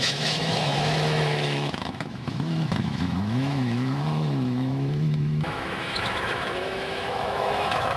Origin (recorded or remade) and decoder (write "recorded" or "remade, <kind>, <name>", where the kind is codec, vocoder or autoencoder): remade, autoencoder, DAC-VAE